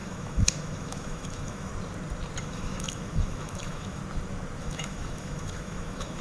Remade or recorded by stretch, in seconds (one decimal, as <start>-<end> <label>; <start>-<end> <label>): 0.0-1.7 remade; 1.7-2.4 recorded; 2.4-4.0 remade; 4.0-4.6 recorded; 4.6-6.2 remade